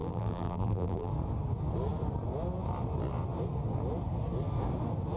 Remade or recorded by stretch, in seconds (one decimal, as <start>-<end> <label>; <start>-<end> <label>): 0.0-1.1 remade; 1.1-5.2 recorded